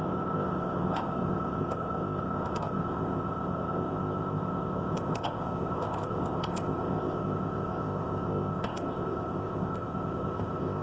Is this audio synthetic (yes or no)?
yes